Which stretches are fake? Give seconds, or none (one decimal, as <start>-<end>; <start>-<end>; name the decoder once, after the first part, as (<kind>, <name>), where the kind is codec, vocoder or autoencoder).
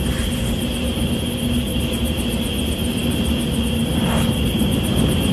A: none